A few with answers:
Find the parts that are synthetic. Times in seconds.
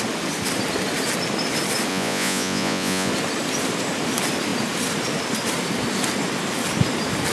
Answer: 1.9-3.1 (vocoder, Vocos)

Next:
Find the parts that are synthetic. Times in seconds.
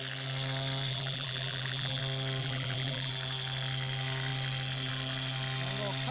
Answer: 0.9-2.0 (vocoder, BigVGAN v2); 2.4-3.1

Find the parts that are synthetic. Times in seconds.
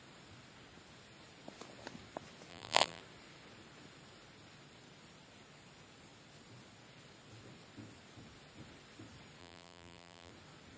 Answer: 2.5-3.0 (vocoder, BigVGAN v2); 9.4-10.3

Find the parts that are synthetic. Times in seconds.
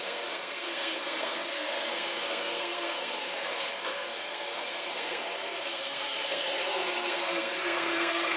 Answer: 0.0-8.4 (codec, SNAC)